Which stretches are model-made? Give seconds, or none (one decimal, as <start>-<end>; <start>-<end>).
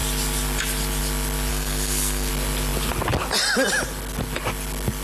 1.5-2.3